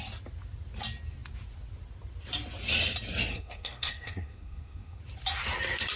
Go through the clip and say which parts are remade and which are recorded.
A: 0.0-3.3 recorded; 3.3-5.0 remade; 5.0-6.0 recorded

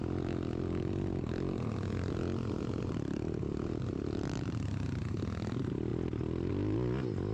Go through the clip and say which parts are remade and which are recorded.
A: 0.0-7.3 recorded

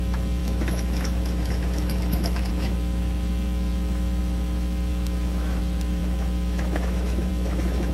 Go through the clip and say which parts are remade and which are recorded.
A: 0.0-7.9 remade

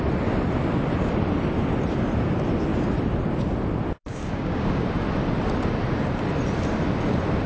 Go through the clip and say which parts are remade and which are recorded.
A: 0.0-4.1 recorded; 4.1-4.8 remade; 4.8-7.5 recorded

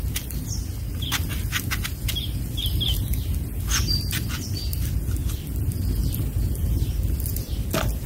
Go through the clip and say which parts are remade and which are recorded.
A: 0.0-5.2 recorded; 5.2-7.5 remade; 7.5-8.1 recorded

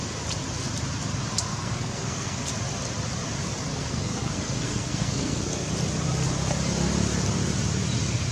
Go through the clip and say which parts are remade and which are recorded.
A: 0.0-1.5 recorded; 1.5-2.5 remade; 2.5-3.7 recorded; 3.7-5.7 remade; 5.7-8.3 recorded

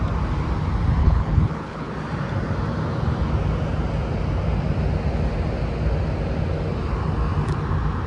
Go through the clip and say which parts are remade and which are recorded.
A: 0.0-1.0 recorded; 1.0-1.9 remade; 1.9-8.1 recorded

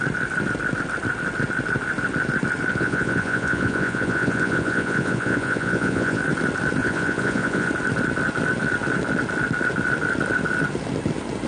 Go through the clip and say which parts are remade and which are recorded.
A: 0.0-2.7 recorded; 2.7-6.2 remade; 6.2-6.8 recorded; 6.8-7.7 remade; 7.7-11.5 recorded